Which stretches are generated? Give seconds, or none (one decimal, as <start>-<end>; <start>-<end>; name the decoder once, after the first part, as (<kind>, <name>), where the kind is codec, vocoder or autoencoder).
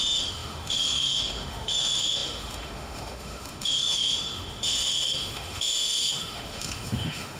0.0-7.4 (autoencoder, DAC-VAE)